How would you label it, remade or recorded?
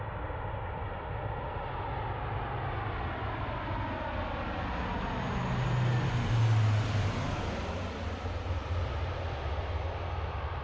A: recorded